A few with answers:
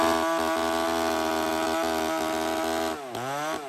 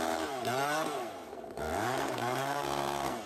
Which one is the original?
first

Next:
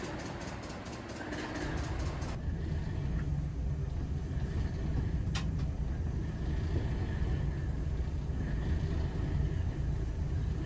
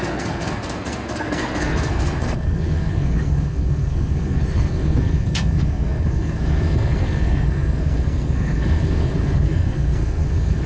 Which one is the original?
first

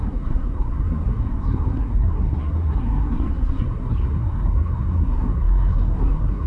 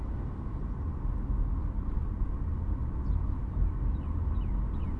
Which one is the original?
second